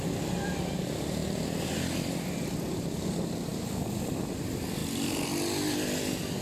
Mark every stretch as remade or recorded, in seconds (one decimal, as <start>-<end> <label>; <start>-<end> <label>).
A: 0.0-6.4 recorded